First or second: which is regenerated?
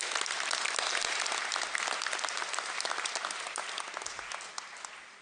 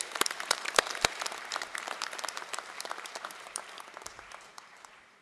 second